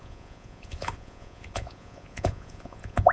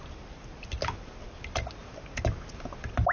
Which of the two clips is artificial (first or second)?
first